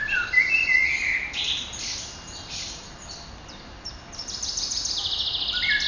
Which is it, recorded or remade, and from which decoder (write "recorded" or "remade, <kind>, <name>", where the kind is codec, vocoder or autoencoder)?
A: recorded